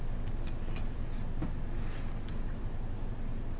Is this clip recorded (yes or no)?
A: yes